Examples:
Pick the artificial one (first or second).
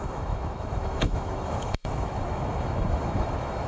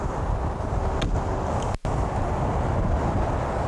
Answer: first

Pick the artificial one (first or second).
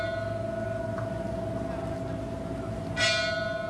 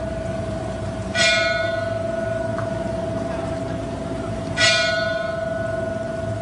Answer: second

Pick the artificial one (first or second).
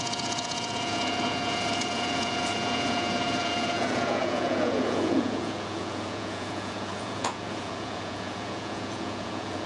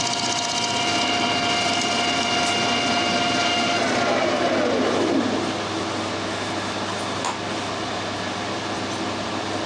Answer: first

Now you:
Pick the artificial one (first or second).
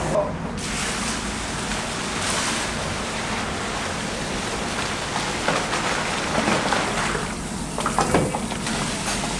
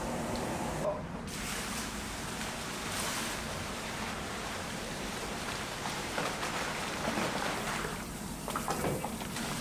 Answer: second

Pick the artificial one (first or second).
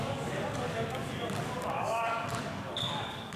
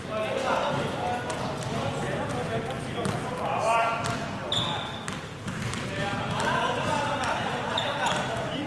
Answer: first